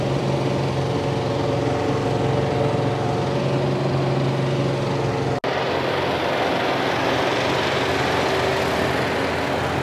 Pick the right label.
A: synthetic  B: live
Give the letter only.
B